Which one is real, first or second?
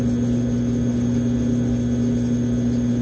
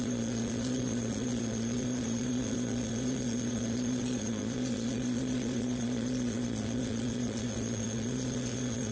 first